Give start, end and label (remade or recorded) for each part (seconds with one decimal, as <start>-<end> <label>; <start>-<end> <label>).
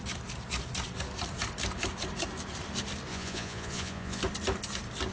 0.0-3.1 recorded; 3.1-4.2 remade; 4.2-5.1 recorded